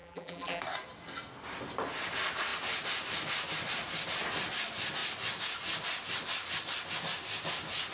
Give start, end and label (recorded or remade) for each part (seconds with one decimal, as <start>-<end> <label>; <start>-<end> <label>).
0.0-0.6 remade; 0.6-7.9 recorded

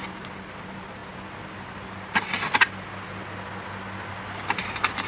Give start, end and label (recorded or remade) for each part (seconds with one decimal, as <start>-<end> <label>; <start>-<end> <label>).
0.0-5.1 recorded

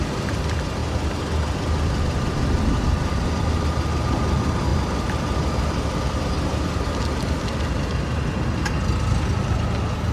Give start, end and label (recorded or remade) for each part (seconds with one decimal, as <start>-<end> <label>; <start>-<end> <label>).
0.0-10.1 recorded

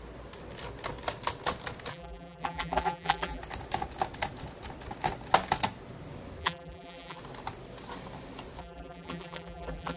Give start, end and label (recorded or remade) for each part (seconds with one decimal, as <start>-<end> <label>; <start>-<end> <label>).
0.0-1.9 recorded; 1.9-3.4 remade; 3.4-6.4 recorded; 6.4-7.2 remade; 7.2-8.6 recorded; 8.6-10.0 remade

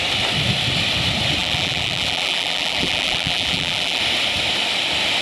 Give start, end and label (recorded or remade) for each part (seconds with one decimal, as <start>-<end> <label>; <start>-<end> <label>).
0.0-1.4 recorded; 1.4-4.0 remade; 4.0-5.2 recorded

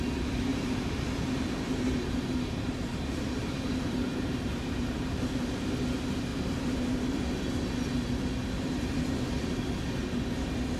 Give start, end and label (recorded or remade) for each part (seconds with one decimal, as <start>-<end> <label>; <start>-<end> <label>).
0.0-0.5 recorded; 0.5-5.7 remade; 5.7-6.3 recorded; 6.3-7.0 remade; 7.0-10.8 recorded

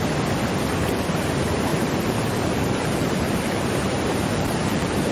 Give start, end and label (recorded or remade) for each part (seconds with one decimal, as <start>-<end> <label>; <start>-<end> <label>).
0.0-1.7 recorded; 1.7-5.1 remade